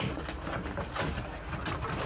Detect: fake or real real